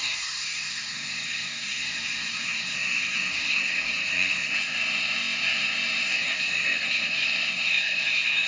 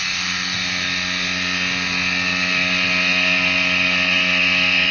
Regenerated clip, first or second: first